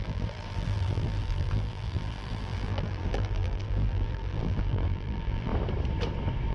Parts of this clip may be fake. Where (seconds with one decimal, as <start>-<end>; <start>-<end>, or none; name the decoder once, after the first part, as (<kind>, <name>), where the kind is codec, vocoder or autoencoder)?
0.0-5.5 (vocoder, BigVGAN v2)